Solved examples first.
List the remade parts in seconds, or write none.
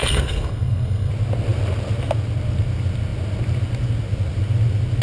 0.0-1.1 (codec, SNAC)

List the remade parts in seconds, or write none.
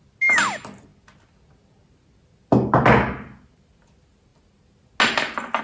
none